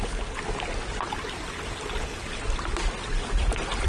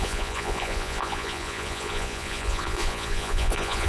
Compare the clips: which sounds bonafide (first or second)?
first